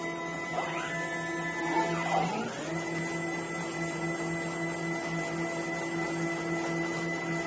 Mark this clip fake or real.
real